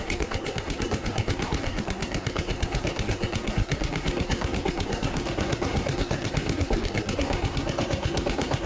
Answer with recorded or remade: remade